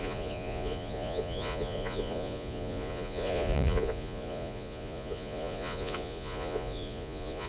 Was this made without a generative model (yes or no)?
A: no